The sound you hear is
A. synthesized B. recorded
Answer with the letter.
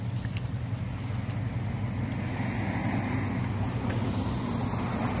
B